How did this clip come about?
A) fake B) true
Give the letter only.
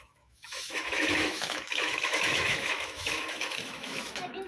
A